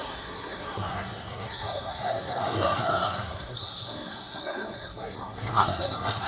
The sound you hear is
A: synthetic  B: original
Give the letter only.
A